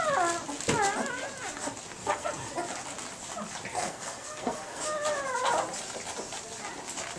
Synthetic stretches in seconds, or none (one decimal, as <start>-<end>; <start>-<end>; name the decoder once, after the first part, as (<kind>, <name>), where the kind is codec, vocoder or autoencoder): 2.0-2.5 (codec, SNAC); 3.7-4.8